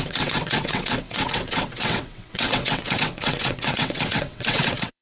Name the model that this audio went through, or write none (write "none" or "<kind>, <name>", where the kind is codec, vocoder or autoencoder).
vocoder, WaveNeXt